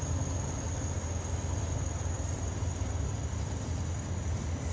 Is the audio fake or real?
real